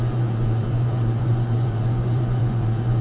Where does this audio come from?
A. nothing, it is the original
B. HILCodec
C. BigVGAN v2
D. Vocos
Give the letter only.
D